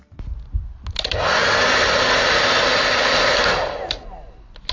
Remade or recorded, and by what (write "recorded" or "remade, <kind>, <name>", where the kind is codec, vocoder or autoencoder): recorded